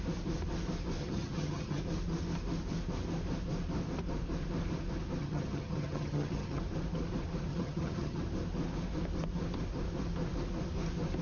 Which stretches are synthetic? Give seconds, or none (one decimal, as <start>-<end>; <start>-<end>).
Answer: 1.0-1.8; 5.2-6.6; 7.5-8.2